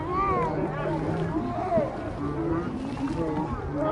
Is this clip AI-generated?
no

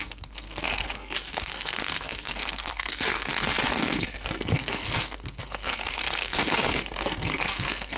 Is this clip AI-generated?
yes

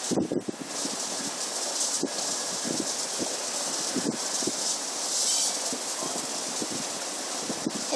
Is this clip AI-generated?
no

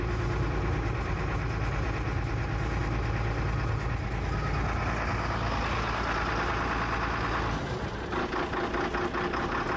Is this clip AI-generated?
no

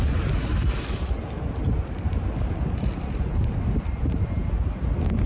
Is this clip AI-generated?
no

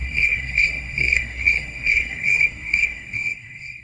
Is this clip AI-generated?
yes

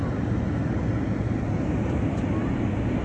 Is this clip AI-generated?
no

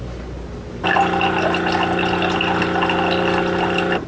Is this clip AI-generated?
no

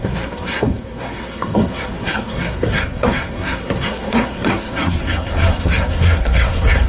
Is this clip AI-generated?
yes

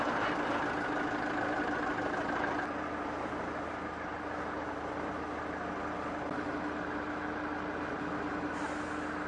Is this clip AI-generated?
no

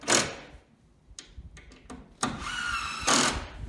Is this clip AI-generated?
no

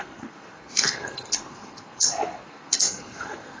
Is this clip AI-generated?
yes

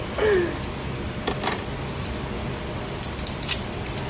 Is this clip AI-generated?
no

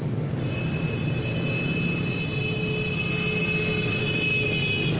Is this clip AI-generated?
no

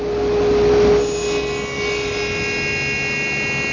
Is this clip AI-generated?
no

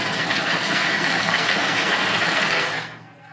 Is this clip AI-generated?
yes